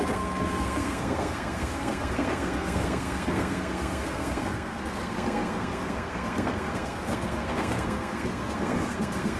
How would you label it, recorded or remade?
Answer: remade